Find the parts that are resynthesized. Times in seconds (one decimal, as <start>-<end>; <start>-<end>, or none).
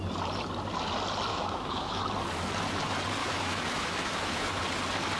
1.3-2.0; 3.2-4.6